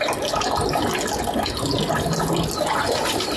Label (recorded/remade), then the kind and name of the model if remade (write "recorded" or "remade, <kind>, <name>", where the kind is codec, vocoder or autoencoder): recorded